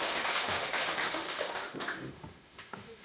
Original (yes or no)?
no